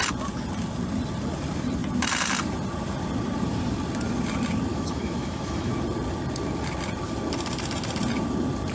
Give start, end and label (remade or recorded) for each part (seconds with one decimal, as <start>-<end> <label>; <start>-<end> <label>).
0.0-4.7 recorded; 4.7-5.7 remade; 5.7-8.7 recorded